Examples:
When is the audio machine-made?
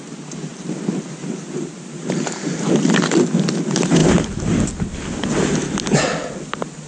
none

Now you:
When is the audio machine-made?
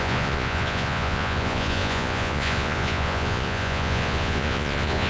0.0-5.1 (vocoder, Vocos)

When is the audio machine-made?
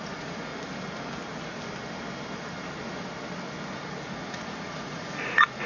0.0-0.5 (vocoder, Vocos); 3.7-5.7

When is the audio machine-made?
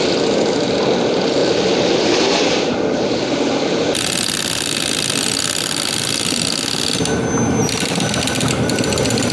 none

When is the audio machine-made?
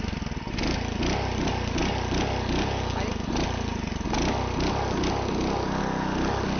none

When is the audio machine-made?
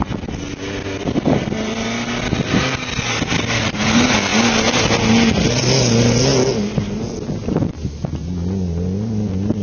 none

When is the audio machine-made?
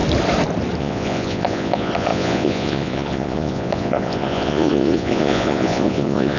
0.8-6.4 (vocoder, Vocos)